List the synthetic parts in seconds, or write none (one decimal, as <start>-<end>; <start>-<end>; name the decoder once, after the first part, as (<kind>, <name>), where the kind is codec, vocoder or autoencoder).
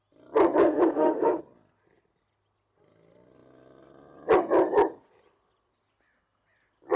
0.6-1.4 (autoencoder, DAC-VAE)